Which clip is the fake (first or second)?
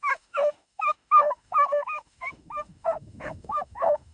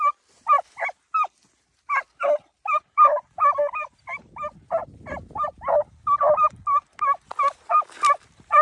first